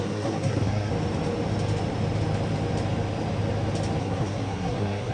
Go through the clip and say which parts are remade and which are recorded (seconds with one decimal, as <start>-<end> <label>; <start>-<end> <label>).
0.0-0.9 remade; 0.9-4.0 recorded; 4.0-5.1 remade

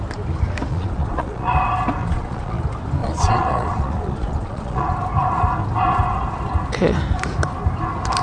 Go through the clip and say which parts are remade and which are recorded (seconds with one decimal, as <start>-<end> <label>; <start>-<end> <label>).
0.0-0.7 recorded; 0.7-1.6 remade; 1.6-2.0 recorded; 2.0-2.6 remade; 2.6-3.0 recorded; 3.0-4.9 remade; 4.9-8.2 recorded

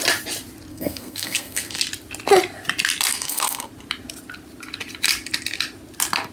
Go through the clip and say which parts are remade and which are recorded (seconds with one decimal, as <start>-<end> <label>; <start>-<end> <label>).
0.0-0.7 recorded; 0.7-1.8 remade; 1.8-3.1 recorded; 3.1-3.7 remade; 3.7-6.3 recorded

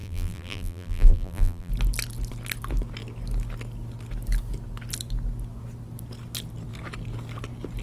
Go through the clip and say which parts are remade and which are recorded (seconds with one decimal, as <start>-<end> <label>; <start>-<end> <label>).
0.0-1.7 remade; 1.7-7.8 recorded

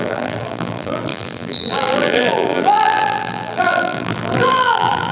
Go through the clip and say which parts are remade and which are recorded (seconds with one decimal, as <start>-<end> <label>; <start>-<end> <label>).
0.0-5.1 remade

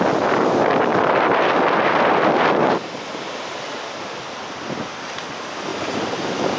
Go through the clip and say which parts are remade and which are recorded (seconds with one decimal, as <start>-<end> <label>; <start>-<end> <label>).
0.0-0.9 recorded; 0.9-3.0 remade; 3.0-5.7 recorded; 5.7-6.6 remade

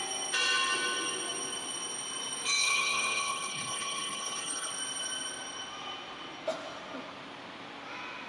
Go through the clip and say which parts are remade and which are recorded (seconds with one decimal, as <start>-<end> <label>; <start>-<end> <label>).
0.0-2.6 recorded; 2.6-4.7 remade; 4.7-8.3 recorded